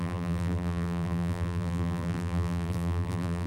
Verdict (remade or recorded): remade